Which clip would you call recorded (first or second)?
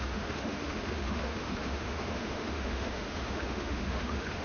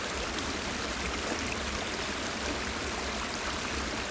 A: second